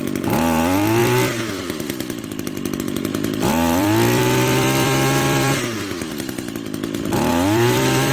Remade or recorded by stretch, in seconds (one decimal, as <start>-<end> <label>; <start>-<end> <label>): 0.0-1.0 recorded; 1.0-5.6 remade; 5.6-7.3 recorded; 7.3-8.1 remade